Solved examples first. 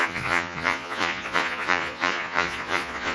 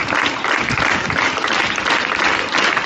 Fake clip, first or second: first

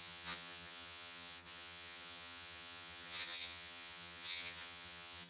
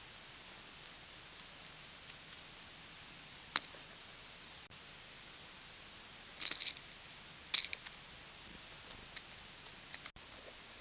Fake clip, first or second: first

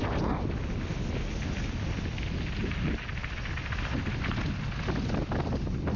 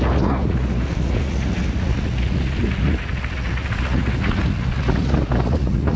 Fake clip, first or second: second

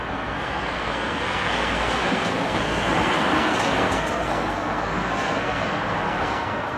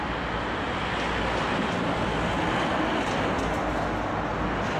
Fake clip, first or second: first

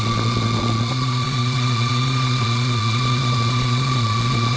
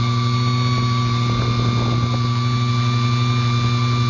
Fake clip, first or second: first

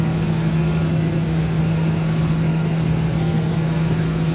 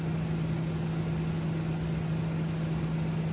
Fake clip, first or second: first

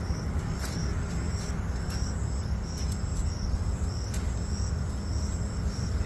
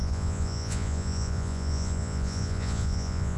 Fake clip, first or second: second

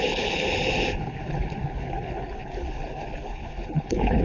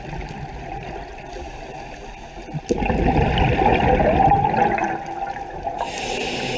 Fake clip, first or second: first